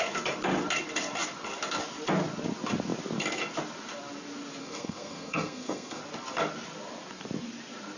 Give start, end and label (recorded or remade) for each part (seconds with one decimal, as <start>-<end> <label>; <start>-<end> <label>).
0.0-4.6 recorded; 4.6-6.0 remade; 6.0-8.0 recorded